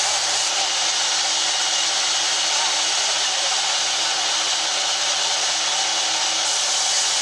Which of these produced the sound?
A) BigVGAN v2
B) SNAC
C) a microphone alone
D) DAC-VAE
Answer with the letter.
C